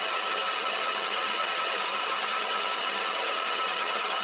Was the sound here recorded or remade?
remade